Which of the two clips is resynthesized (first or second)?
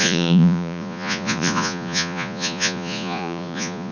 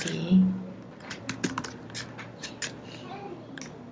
first